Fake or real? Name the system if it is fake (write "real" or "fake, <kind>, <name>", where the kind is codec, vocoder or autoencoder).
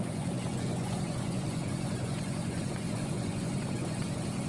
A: fake, vocoder, Vocos